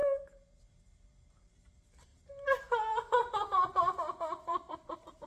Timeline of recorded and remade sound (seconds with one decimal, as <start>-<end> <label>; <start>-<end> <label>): 0.0-0.6 recorded; 0.6-5.3 remade